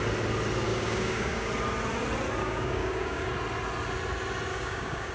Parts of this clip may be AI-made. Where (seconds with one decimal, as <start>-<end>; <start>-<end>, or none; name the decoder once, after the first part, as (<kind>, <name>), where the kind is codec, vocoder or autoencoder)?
0.7-1.5 (codec, DAC); 2.4-3.3; 4.5-5.1